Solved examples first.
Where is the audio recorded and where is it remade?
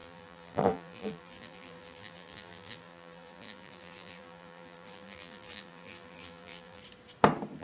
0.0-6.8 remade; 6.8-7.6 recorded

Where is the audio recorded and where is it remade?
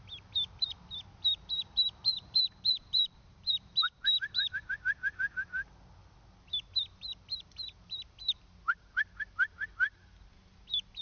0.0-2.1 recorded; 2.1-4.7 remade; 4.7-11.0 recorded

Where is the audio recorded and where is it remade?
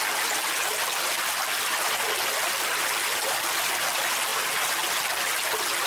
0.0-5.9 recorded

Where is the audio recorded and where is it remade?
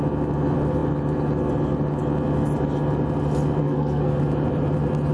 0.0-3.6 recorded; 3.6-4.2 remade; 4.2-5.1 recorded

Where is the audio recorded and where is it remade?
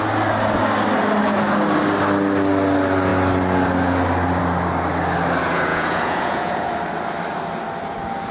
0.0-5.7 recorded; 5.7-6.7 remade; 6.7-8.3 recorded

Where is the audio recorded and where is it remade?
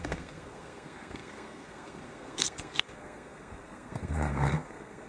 0.0-5.1 remade